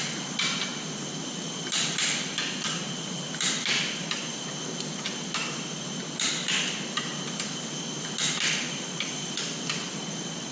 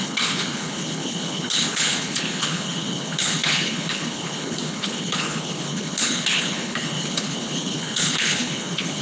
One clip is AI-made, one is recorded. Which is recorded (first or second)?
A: first